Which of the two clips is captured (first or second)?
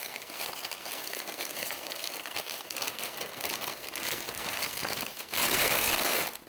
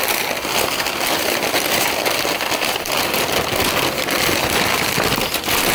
second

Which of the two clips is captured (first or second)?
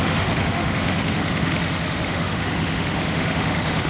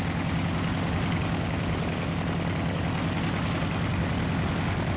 second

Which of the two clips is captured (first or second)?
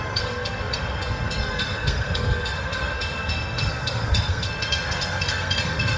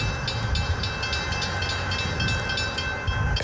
second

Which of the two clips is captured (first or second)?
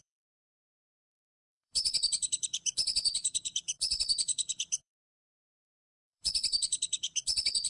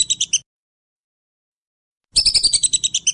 second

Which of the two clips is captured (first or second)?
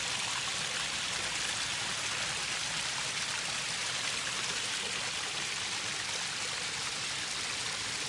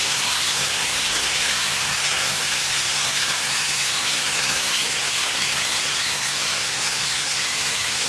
first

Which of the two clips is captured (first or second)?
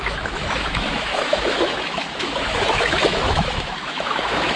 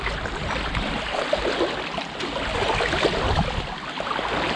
second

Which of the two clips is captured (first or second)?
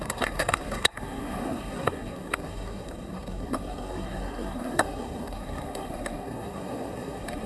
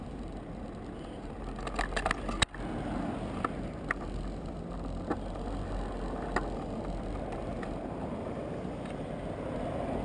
second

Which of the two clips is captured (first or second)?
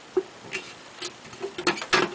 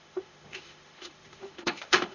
first